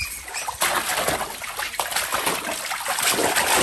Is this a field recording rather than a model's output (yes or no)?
yes